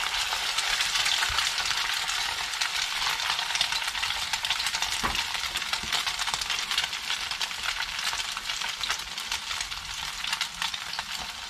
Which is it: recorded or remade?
remade